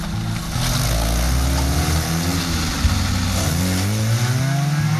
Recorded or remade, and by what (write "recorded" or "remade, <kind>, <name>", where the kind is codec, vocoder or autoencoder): recorded